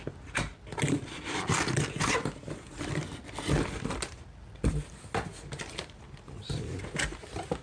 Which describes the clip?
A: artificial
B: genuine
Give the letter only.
B